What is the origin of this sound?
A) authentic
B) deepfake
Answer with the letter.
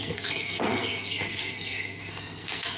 B